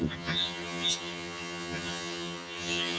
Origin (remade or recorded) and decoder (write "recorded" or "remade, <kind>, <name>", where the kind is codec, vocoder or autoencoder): remade, vocoder, HiFi-GAN